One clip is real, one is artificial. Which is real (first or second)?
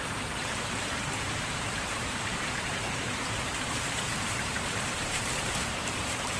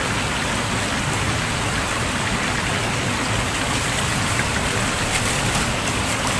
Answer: second